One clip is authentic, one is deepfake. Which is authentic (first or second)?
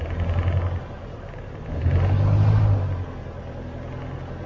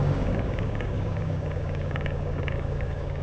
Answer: first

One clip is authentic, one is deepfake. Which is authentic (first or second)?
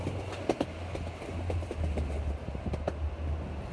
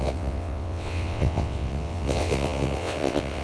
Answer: first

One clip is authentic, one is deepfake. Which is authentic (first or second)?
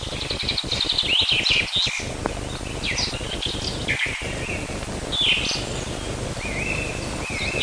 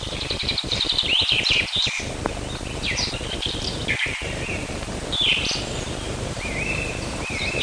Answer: first